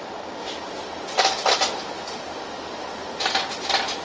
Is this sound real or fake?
real